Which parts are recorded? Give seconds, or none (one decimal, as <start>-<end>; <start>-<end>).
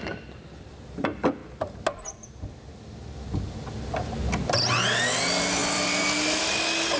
0.0-7.0